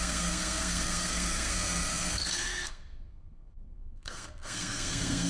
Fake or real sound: fake